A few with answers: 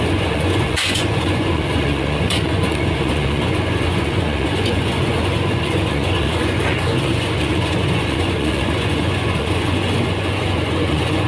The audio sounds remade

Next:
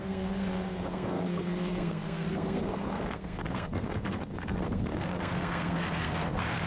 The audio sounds remade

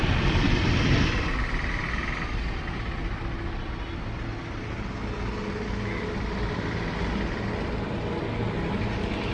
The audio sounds recorded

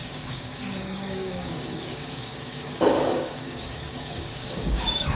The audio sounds remade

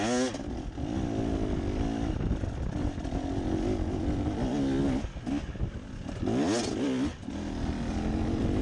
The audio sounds recorded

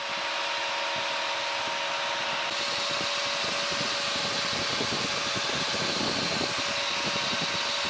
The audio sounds recorded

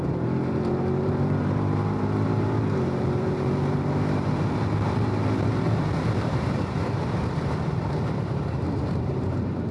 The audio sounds remade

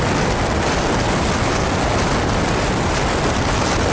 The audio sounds recorded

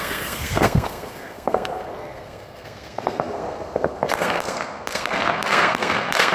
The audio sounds remade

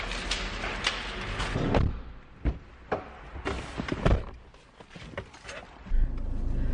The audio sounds recorded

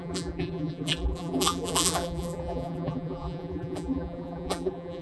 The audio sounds remade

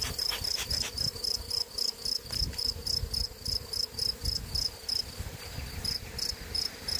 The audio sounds recorded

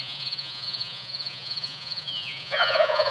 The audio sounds remade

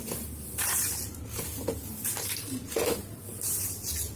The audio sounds recorded